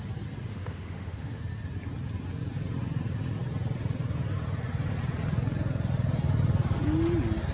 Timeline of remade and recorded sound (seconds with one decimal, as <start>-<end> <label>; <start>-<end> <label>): 0.0-0.5 recorded; 0.5-1.4 remade; 1.4-7.5 recorded